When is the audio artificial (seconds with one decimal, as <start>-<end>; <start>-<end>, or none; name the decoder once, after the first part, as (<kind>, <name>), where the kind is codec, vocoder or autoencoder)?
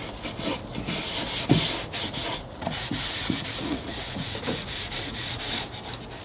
2.2-5.6 (vocoder, Vocos)